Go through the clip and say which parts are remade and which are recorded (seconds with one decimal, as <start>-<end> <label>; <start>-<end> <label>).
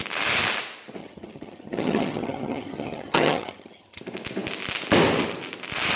0.0-1.0 recorded; 1.0-4.0 remade; 4.0-6.0 recorded